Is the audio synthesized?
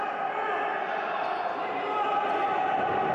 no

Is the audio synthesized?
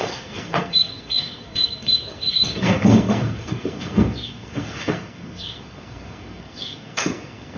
yes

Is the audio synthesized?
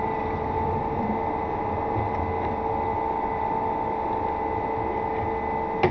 no